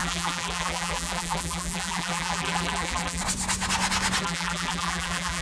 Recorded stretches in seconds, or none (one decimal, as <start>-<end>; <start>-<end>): 3.2-4.2